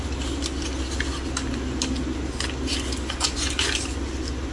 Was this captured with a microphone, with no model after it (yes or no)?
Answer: yes